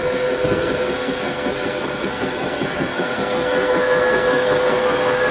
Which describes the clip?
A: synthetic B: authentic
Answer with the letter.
A